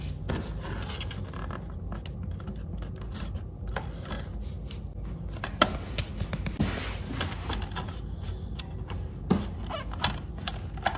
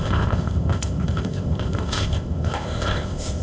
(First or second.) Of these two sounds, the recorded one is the first